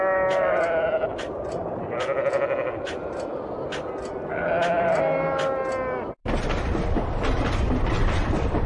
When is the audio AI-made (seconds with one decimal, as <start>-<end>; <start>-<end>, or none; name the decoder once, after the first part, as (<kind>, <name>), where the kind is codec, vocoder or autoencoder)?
6.2-8.7 (vocoder, BigVGAN v2)